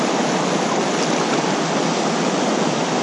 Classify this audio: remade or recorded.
remade